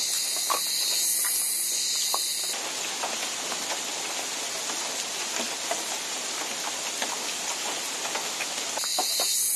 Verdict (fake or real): real